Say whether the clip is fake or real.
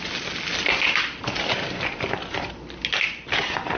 real